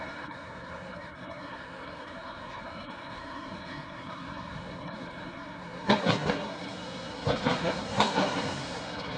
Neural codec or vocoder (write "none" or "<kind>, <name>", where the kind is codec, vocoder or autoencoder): codec, SNAC